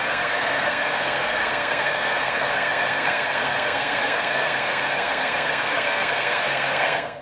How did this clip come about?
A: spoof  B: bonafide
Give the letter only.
A